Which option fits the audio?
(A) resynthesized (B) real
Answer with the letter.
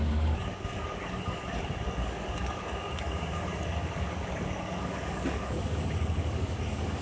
A